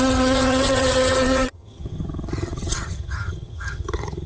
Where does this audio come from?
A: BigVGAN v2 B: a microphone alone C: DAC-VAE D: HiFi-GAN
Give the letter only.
D